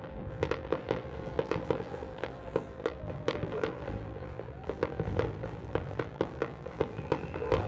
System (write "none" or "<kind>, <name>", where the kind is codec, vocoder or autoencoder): vocoder, BigVGAN v2